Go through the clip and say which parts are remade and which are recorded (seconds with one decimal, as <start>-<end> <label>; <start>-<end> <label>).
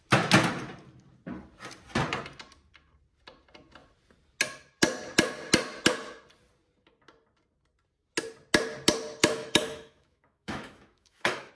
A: 0.0-9.2 recorded; 9.2-11.5 remade